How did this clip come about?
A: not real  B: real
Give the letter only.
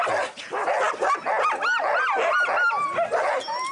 B